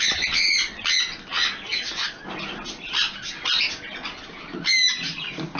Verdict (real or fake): real